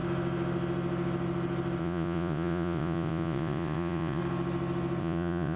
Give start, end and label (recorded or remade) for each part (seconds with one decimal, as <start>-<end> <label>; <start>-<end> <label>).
0.0-1.8 recorded; 1.8-4.2 remade; 4.2-5.0 recorded; 5.0-5.6 remade